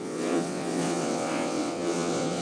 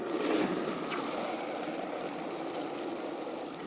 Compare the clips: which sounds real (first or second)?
second